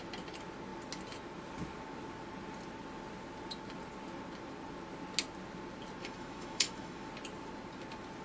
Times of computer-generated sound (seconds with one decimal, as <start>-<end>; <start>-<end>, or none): 6.0-7.1